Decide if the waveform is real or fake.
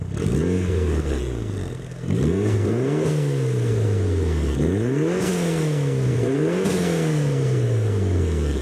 fake